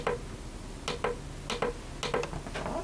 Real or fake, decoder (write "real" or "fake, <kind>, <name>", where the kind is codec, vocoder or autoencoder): real